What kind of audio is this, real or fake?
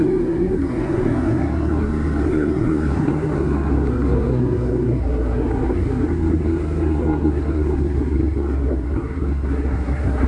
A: fake